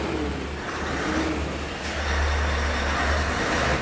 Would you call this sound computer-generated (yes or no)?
no